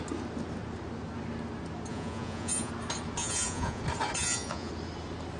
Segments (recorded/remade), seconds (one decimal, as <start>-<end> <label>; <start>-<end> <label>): 0.0-1.9 recorded; 1.9-2.7 remade; 2.7-3.2 recorded; 3.2-3.8 remade; 3.8-4.2 recorded; 4.2-4.7 remade; 4.7-5.4 recorded